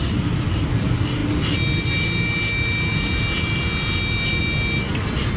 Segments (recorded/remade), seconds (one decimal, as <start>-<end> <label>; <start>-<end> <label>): 0.0-5.4 recorded